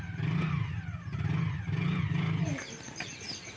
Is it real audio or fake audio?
real